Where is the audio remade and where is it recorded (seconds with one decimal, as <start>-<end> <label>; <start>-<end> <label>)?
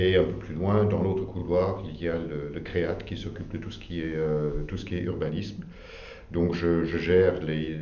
0.0-1.4 recorded; 1.4-5.3 remade; 5.3-7.8 recorded